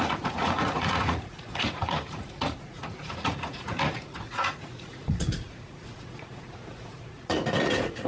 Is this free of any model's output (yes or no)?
no